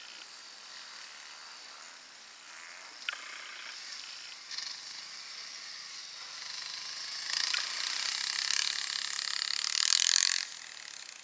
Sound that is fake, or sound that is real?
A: real